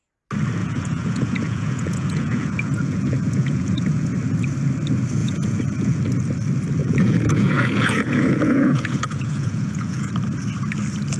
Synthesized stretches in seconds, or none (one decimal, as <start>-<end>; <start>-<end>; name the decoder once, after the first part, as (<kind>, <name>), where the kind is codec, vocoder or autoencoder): 0.6-4.1 (vocoder, Vocos); 5.2-6.0; 6.8-10.1